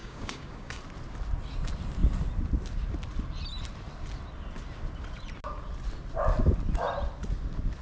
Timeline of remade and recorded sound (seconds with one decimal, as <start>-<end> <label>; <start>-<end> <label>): 0.0-0.8 remade; 0.8-7.8 recorded